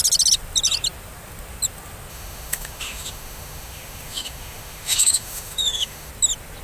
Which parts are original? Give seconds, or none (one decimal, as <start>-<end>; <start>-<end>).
0.0-2.1; 6.1-6.6